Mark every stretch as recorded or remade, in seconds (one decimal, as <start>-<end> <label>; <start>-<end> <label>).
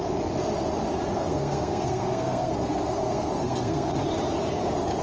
0.0-1.2 recorded; 1.2-3.9 remade; 3.9-5.0 recorded